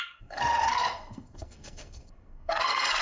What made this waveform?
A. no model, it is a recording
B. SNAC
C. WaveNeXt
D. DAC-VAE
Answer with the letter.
B